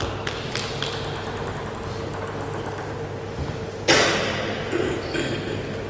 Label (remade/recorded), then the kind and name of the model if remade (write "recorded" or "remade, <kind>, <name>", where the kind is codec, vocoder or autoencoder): recorded